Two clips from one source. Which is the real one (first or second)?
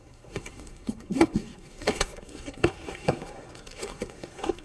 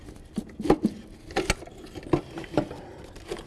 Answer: second